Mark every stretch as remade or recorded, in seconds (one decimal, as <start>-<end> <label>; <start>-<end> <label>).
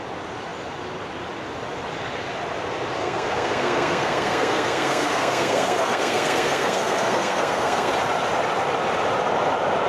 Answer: 0.0-3.0 recorded; 3.0-7.9 remade; 7.9-9.9 recorded